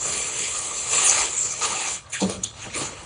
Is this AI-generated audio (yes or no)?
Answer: yes